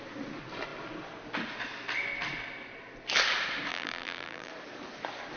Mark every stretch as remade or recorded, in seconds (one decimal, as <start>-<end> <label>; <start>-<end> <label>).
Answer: 0.0-3.7 recorded; 3.7-4.5 remade; 4.5-5.4 recorded